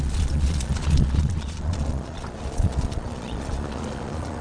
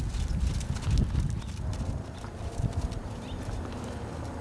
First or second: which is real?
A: second